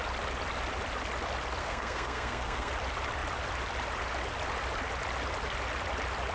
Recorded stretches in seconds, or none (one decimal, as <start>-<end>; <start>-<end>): 0.0-1.6; 2.7-6.3